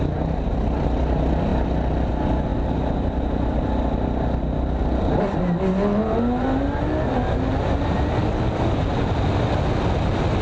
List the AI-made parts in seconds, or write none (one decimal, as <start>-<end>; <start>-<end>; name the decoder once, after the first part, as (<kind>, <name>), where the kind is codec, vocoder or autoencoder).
8.2-8.7 (codec, DAC)